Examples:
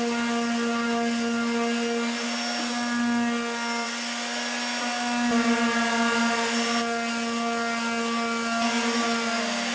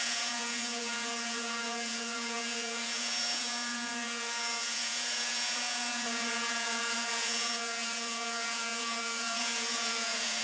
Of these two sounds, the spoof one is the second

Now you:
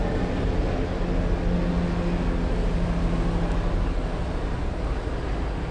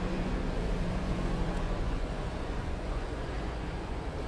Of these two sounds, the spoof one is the second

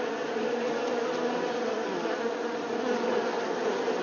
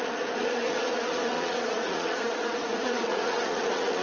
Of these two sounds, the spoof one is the second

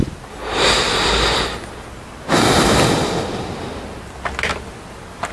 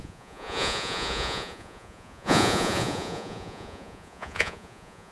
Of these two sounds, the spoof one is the second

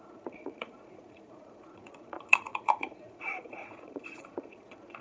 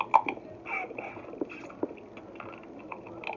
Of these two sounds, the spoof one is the first